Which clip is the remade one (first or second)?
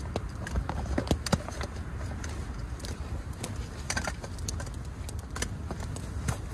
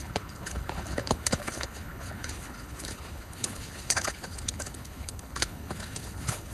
second